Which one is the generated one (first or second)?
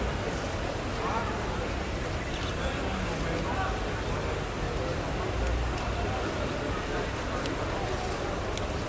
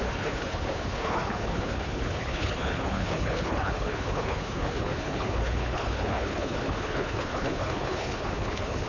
second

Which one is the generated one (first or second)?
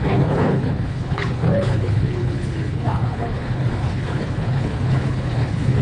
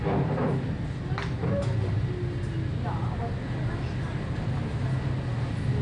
first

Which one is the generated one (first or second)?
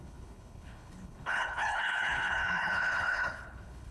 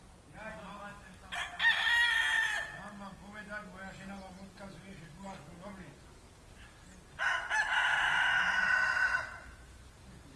first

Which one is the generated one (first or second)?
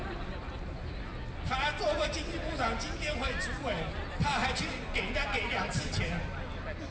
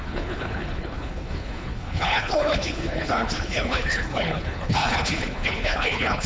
second